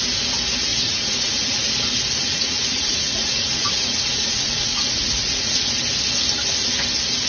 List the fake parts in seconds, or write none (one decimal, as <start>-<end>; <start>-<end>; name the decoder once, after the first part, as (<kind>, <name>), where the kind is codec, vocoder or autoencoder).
0.7-1.7 (vocoder, Vocos); 2.2-5.9